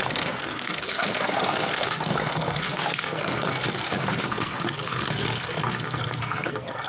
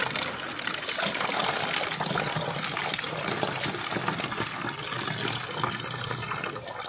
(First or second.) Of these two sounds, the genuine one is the second